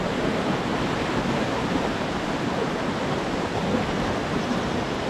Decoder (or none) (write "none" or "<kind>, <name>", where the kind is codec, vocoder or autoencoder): none